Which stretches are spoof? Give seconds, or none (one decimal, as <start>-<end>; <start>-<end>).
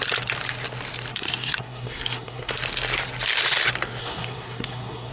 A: 1.1-2.5; 4.0-5.1